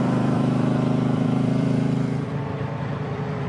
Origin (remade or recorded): remade